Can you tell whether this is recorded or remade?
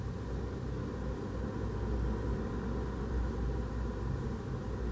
recorded